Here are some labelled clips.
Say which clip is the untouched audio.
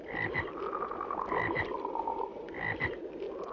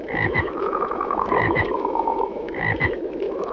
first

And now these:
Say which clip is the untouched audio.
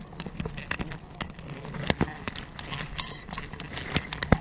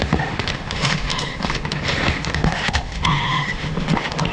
first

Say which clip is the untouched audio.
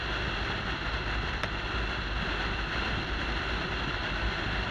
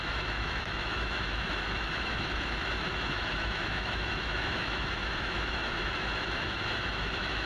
first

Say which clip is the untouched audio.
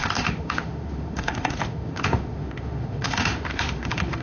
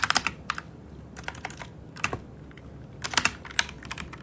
second